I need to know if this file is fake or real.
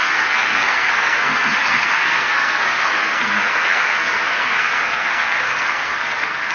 fake